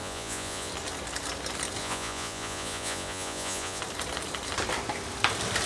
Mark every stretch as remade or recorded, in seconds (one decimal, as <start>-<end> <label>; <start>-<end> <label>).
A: 0.0-0.7 remade; 0.7-1.8 recorded; 1.8-3.8 remade; 3.8-5.7 recorded